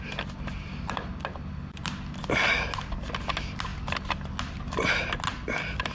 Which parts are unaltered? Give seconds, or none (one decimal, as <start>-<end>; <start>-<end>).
0.0-5.9